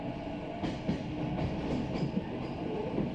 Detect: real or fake real